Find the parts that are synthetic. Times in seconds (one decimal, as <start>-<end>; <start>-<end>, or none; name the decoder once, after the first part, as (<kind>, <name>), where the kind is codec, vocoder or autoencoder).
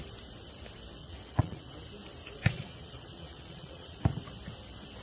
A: 1.0-1.7 (vocoder, Vocos); 2.4-4.0